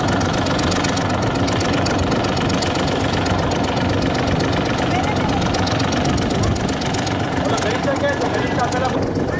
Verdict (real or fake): real